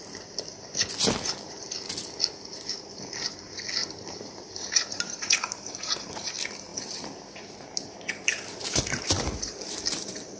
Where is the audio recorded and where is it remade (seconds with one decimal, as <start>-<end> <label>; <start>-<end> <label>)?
0.0-3.8 recorded; 3.8-6.3 remade; 6.3-6.7 recorded; 6.7-10.4 remade